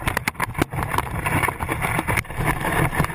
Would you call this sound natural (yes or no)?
yes